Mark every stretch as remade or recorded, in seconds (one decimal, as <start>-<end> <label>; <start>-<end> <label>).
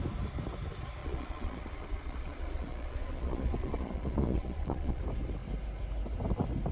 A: 0.0-1.0 recorded; 1.0-5.0 remade; 5.0-6.7 recorded